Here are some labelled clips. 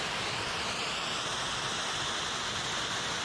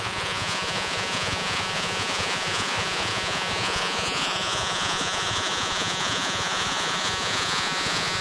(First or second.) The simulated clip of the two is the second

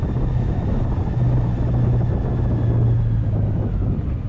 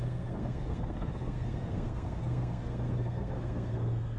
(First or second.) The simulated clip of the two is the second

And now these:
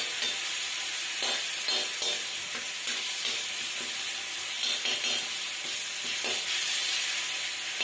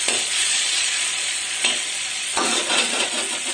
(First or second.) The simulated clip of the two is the second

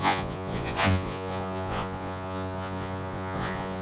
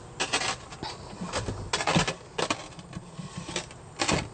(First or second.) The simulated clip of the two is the first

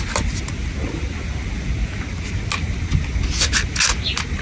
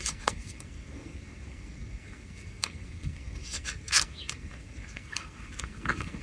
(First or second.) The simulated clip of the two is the second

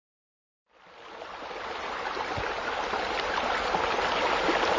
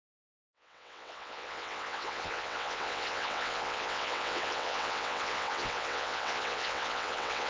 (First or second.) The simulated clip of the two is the second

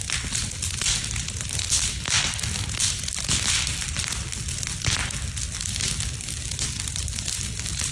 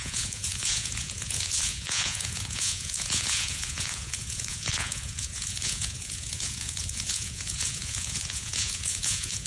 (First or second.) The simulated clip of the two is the second